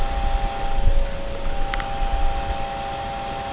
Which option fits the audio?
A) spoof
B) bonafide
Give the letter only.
B